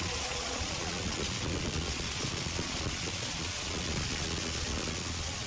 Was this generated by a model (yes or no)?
yes